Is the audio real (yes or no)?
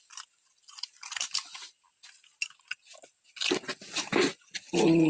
yes